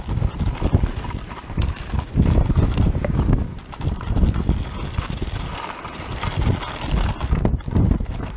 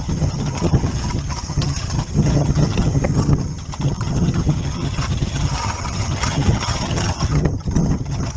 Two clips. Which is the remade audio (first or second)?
second